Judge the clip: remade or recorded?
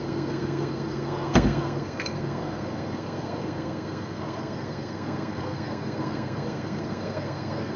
remade